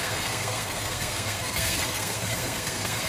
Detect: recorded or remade remade